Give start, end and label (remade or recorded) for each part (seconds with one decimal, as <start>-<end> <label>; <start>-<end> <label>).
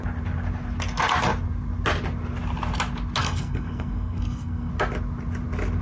0.0-3.2 recorded; 3.2-4.7 remade; 4.7-5.8 recorded